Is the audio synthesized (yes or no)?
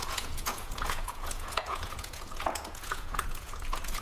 yes